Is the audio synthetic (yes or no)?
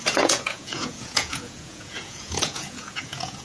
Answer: yes